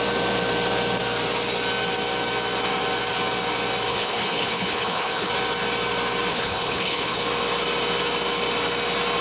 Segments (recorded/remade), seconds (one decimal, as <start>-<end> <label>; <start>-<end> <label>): 0.0-3.9 recorded; 3.9-5.3 remade; 5.3-6.3 recorded; 6.3-7.2 remade; 7.2-9.2 recorded